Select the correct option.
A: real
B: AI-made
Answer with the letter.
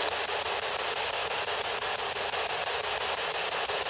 A